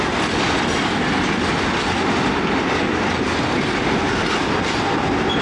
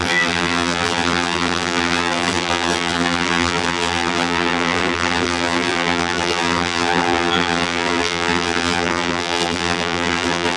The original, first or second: first